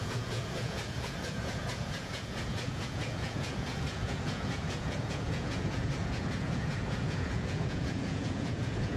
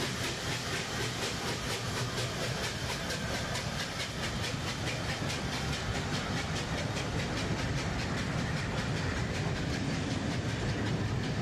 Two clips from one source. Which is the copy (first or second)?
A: first